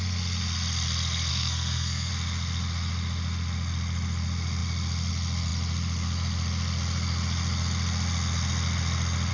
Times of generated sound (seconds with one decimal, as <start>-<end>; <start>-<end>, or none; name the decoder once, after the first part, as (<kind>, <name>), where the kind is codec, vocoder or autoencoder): 1.3-2.1 (codec, SNAC)